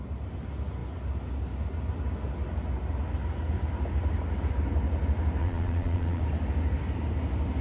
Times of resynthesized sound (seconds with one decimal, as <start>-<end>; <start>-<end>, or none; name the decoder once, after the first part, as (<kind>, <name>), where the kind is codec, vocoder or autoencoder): 5.4-6.2 (vocoder, Vocos)